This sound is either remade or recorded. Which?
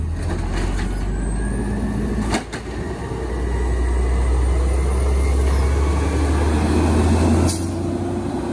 recorded